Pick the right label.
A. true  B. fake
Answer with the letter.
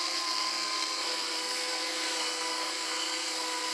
B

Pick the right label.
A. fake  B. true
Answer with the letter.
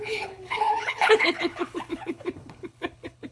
A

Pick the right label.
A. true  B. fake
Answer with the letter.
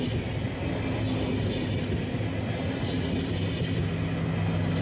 A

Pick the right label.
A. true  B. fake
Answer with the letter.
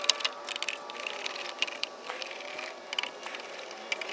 A